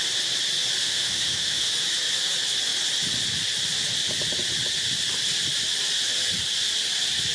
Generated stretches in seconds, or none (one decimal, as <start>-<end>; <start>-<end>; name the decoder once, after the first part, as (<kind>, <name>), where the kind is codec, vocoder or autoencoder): 0.8-1.7 (autoencoder, DAC-VAE)